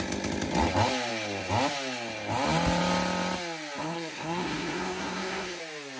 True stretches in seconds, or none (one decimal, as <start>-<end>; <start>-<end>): 0.0-3.8; 5.6-6.0